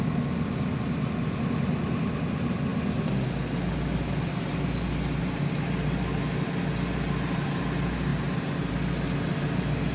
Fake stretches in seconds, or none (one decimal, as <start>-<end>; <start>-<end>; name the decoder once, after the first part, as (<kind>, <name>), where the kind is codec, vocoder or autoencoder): none